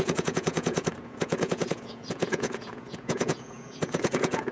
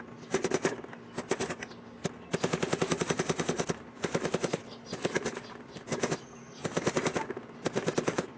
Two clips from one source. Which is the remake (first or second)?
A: first